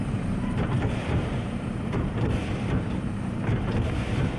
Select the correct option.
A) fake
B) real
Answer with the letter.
A